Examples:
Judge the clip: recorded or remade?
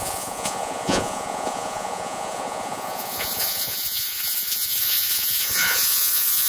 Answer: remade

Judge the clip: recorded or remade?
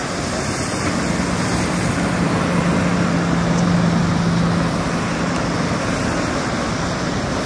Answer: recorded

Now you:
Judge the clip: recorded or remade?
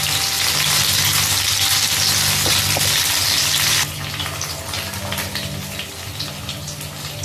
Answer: recorded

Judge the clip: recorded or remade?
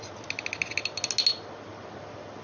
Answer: recorded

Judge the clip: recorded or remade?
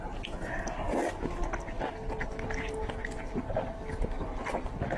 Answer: recorded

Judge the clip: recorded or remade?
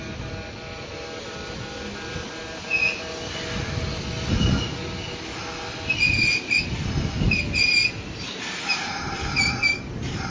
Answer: recorded